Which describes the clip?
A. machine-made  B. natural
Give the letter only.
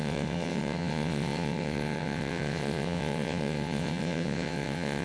A